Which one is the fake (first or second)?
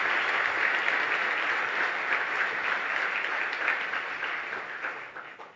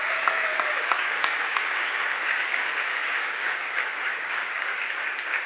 second